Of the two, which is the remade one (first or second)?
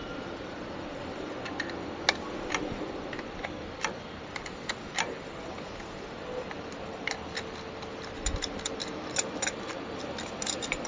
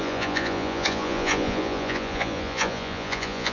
second